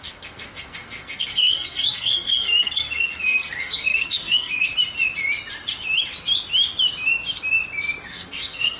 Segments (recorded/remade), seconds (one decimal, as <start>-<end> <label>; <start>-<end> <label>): 0.0-4.7 remade; 4.7-8.0 recorded; 8.0-8.8 remade